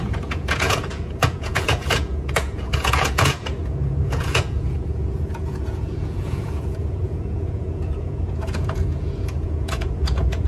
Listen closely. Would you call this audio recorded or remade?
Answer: remade